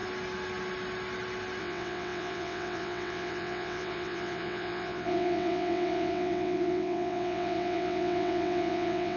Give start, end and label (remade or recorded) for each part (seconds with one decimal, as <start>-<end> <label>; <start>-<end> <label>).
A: 0.0-1.6 recorded; 1.6-9.2 remade